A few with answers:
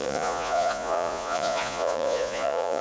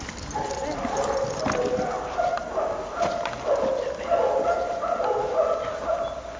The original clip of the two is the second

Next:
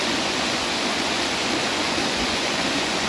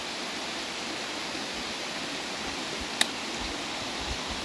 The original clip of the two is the second